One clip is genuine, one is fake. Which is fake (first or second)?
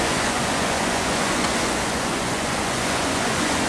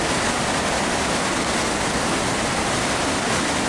first